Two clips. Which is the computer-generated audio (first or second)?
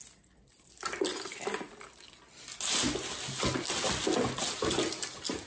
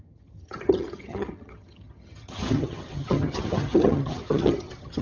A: second